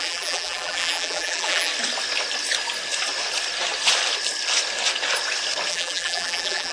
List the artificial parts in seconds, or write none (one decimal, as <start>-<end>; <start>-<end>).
0.0-1.7; 5.7-6.7